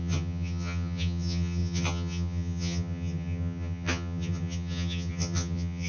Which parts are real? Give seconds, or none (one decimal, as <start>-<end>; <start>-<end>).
none